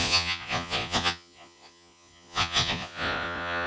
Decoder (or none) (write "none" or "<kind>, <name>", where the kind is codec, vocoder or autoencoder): vocoder, Vocos